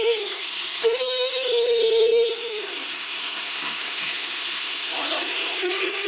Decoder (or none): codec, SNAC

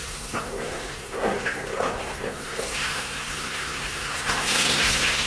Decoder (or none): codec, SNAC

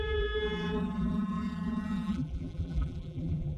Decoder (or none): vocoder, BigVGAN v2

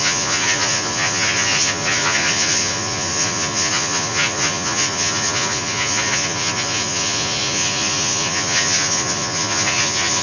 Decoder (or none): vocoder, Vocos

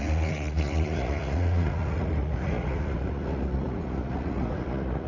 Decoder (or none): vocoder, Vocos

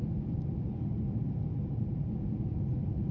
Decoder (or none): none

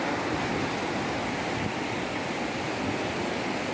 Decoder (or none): none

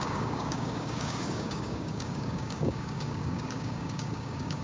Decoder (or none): codec, DAC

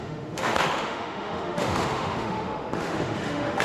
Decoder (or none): autoencoder, DAC-VAE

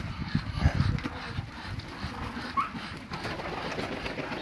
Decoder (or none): none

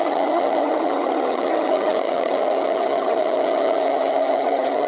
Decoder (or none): vocoder, HiFi-GAN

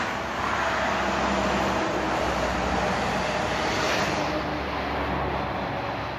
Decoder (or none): none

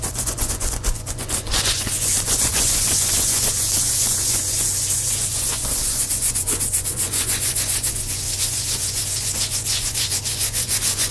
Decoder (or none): vocoder, Vocos